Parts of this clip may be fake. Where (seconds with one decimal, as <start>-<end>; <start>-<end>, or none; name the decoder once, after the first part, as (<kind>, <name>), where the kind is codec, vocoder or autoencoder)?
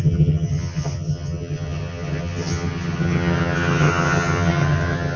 0.0-5.2 (vocoder, HiFi-GAN)